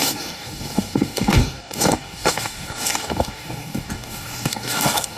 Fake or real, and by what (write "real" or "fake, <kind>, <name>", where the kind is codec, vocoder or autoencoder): fake, codec, DAC